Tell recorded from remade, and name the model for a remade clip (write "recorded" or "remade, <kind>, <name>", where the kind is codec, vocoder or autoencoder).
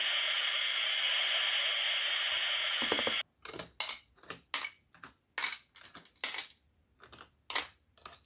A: recorded